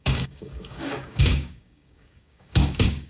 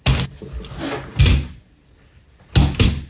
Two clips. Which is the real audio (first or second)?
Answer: second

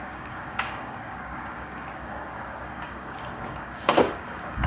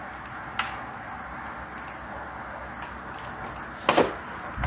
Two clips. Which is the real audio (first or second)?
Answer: second